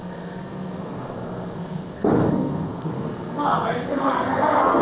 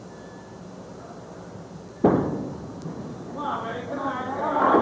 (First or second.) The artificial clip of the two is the first